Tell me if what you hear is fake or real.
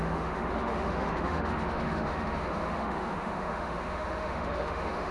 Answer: fake